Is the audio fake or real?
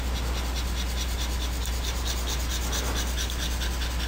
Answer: real